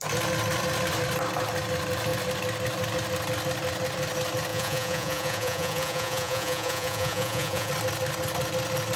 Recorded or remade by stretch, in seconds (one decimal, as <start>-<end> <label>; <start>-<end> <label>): 0.0-4.5 recorded; 4.5-7.7 remade; 7.7-9.0 recorded